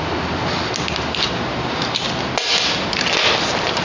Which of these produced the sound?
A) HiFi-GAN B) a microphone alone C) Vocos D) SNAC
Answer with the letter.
B